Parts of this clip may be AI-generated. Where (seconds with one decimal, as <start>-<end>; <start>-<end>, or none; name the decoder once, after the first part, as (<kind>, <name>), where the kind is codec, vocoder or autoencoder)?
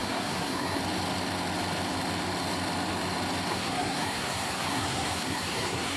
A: 0.0-0.8 (codec, SNAC); 3.5-6.0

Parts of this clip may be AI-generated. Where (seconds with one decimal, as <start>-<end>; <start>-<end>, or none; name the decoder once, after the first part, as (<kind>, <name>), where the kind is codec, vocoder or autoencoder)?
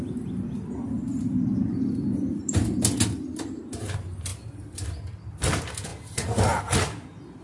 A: none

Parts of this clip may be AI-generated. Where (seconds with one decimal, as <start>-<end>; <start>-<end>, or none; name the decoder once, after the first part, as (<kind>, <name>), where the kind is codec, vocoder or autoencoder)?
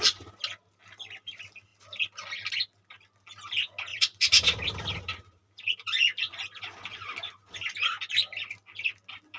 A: 3.9-5.0 (vocoder, BigVGAN v2); 5.4-7.1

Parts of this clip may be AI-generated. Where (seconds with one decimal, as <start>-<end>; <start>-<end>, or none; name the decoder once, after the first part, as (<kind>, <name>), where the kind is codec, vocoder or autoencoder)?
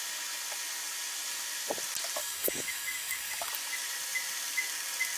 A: 2.2-3.5 (codec, DAC)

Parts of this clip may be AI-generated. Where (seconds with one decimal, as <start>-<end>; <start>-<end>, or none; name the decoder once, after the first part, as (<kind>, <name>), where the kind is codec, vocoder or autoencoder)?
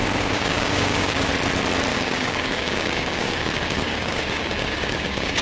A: 0.0-1.3 (codec, DAC); 1.9-5.4